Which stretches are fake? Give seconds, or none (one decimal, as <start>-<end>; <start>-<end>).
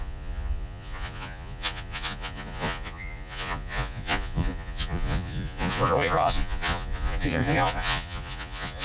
0.0-8.8